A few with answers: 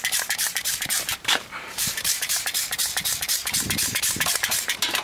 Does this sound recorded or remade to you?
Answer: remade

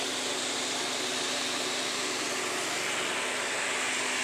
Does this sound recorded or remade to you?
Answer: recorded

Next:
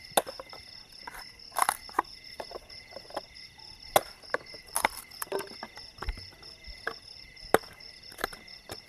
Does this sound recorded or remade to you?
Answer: recorded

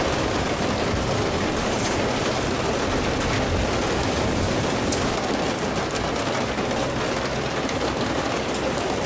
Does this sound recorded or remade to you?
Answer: recorded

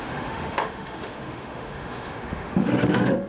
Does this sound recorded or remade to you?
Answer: remade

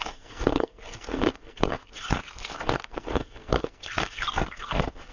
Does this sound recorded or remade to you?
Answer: remade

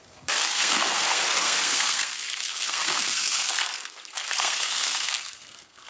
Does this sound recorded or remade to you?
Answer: remade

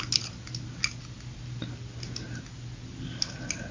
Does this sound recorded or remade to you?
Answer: recorded